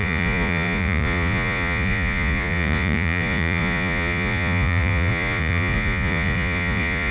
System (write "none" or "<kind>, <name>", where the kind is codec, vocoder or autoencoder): vocoder, Vocos